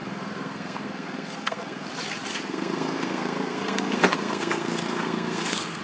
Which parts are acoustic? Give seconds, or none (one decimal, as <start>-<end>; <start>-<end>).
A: 1.9-2.3